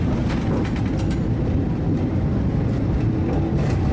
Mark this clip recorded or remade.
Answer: recorded